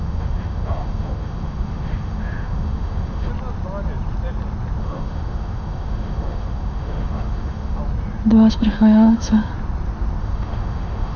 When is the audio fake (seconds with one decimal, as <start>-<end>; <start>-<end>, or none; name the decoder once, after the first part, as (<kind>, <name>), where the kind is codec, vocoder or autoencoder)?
0.0-3.3 (autoencoder, DAC-VAE); 4.8-7.8; 8.5-9.5; 10.2-11.2